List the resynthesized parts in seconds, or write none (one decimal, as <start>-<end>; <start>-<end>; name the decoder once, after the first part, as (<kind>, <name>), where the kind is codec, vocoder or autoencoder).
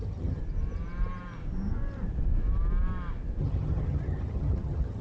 0.0-0.4 (vocoder, HiFi-GAN); 3.4-5.0